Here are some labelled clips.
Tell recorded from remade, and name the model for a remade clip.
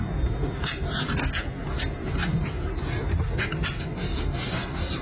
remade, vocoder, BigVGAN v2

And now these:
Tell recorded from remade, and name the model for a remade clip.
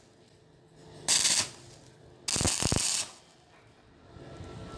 recorded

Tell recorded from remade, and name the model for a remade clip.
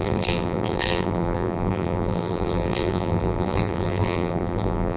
remade, vocoder, BigVGAN v2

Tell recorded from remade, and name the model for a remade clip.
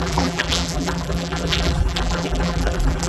remade, vocoder, BigVGAN v2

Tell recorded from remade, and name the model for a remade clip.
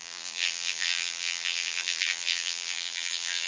remade, vocoder, BigVGAN v2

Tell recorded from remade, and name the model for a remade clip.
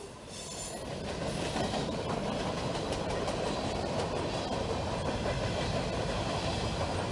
recorded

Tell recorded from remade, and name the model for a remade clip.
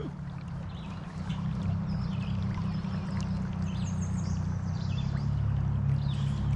recorded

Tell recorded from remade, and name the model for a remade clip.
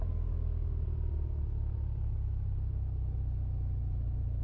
recorded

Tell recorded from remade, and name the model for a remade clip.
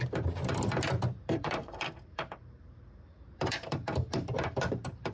remade, vocoder, BigVGAN v2